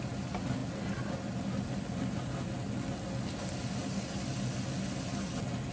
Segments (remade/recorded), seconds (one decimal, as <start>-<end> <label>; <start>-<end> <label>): 0.0-5.7 recorded